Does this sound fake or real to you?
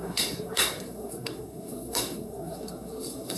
fake